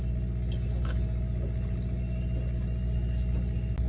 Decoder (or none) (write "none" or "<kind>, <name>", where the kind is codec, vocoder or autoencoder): none